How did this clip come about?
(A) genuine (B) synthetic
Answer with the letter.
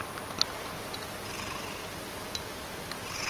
A